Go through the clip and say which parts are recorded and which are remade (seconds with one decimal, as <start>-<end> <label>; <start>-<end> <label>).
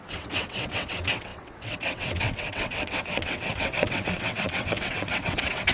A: 0.0-5.7 remade